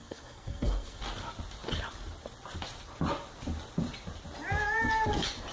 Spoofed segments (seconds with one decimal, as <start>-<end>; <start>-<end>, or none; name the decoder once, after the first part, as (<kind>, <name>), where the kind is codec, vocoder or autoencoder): 0.0-1.0 (codec, SNAC)